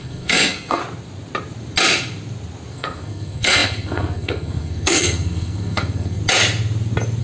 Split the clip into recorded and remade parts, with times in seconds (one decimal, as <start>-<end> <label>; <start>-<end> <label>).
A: 0.0-0.8 remade; 0.8-2.7 recorded; 2.7-6.2 remade; 6.2-7.2 recorded